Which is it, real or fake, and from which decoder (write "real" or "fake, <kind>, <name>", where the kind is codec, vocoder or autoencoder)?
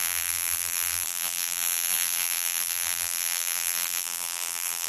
fake, vocoder, BigVGAN v2